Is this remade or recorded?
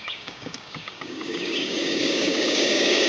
remade